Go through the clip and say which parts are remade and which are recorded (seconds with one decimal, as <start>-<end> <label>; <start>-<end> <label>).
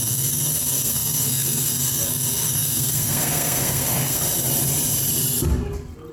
0.0-4.2 remade; 4.2-6.1 recorded